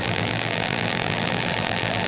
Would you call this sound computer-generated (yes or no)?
yes